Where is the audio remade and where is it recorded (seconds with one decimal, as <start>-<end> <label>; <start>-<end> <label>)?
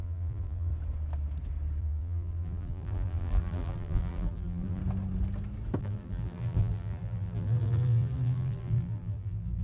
0.0-0.7 remade; 0.7-1.8 recorded; 1.8-4.8 remade; 4.8-5.8 recorded; 5.8-9.6 remade